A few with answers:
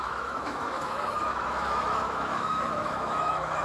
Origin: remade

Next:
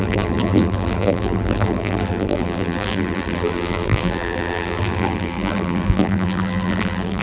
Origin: remade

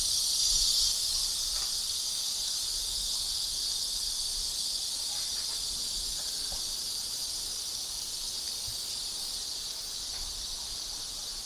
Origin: remade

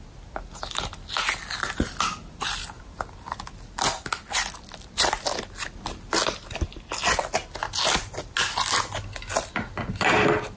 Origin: recorded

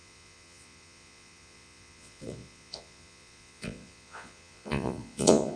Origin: remade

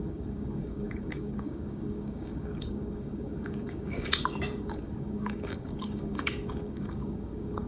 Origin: remade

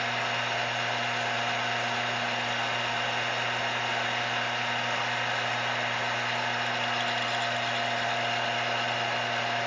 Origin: recorded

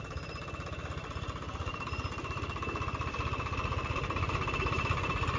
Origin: remade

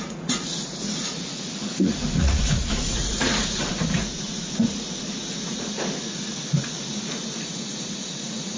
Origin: remade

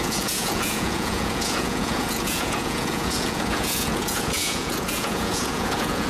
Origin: remade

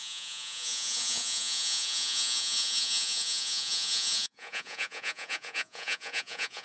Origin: remade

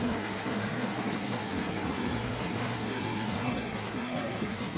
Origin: remade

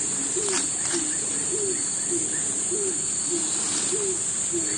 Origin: recorded